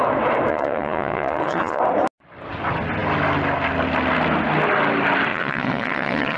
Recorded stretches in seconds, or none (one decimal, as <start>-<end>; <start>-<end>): 0.0-0.5; 1.8-5.3